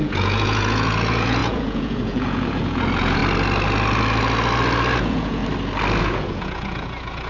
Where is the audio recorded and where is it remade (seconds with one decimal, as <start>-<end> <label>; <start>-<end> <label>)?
0.0-3.2 remade; 3.2-5.0 recorded; 5.0-5.4 remade; 5.4-6.0 recorded; 6.0-7.3 remade